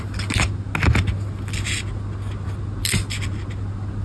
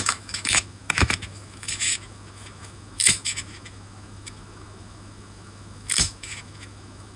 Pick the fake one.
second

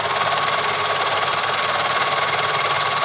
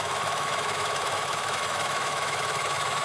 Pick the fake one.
second